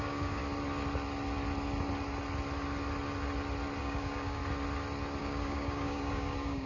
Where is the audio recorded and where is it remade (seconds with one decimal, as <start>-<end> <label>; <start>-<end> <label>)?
0.0-0.4 remade; 0.4-3.8 recorded; 3.8-4.4 remade; 4.4-5.2 recorded; 5.2-6.7 remade